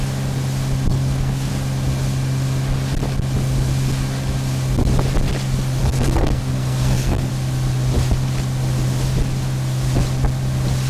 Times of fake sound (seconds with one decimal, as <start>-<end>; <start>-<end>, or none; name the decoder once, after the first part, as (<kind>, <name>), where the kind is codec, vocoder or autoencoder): 0.9-1.5 (codec, SNAC); 5.8-7.3